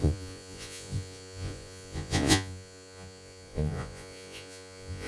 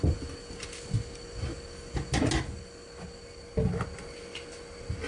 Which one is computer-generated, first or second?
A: first